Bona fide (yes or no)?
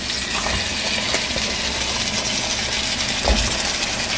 yes